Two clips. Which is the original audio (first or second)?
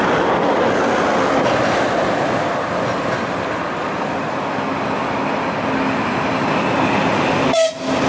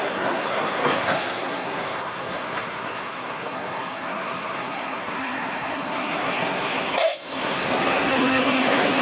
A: first